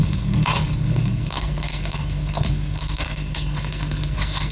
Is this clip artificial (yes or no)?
yes